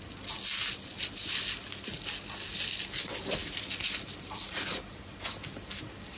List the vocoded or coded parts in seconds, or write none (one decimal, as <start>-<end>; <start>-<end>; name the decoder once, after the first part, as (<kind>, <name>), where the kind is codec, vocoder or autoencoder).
0.9-2.1 (vocoder, BigVGAN v2); 3.4-4.8

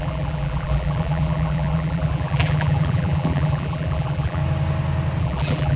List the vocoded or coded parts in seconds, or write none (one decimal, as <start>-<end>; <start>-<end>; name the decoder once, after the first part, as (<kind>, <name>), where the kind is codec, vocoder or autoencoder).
0.0-4.4 (vocoder, BigVGAN v2); 5.2-5.8